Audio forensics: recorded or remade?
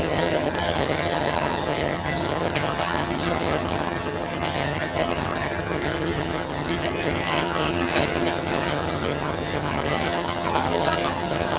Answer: remade